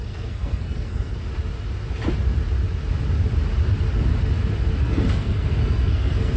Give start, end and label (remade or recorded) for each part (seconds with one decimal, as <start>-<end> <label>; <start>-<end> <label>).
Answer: 0.0-1.3 remade; 1.3-4.7 recorded; 4.7-6.4 remade